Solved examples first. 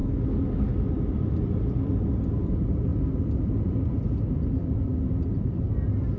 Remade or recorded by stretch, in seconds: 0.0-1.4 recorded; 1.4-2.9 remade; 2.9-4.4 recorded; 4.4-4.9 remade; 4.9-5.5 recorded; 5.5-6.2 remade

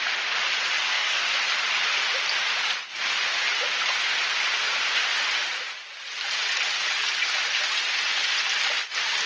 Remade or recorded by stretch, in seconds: 0.0-0.8 recorded; 0.8-1.3 remade; 1.3-9.3 recorded

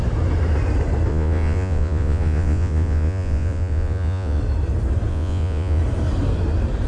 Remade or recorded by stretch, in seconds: 0.0-1.1 recorded; 1.1-4.4 remade; 4.4-5.1 recorded; 5.1-5.8 remade; 5.8-6.9 recorded

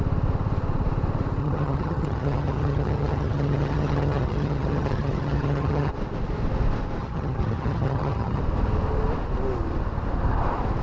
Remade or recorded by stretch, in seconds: 0.0-1.4 recorded; 1.4-5.9 remade; 5.9-7.0 recorded; 7.0-8.4 remade; 8.4-10.8 recorded

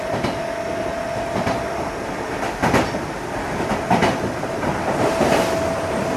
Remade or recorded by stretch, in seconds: 0.0-6.2 recorded

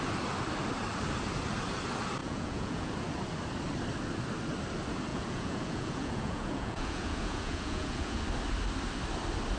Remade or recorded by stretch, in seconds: 0.0-2.2 recorded; 2.2-2.9 remade; 2.9-5.1 recorded; 5.1-8.2 remade; 8.2-9.6 recorded